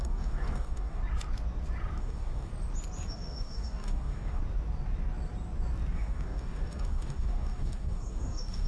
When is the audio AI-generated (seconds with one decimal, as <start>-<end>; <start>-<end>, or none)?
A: 0.0-1.0; 2.0-2.5; 3.1-4.4; 5.9-8.7